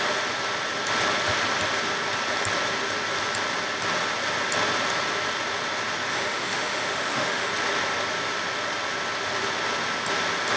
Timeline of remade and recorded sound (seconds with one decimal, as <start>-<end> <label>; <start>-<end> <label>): 0.0-6.1 recorded; 6.1-7.5 remade; 7.5-10.6 recorded